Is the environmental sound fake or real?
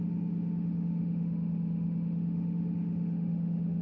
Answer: fake